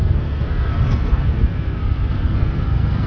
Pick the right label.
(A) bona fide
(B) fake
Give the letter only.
B